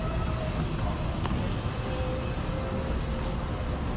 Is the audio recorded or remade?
recorded